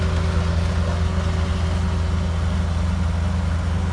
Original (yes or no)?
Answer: yes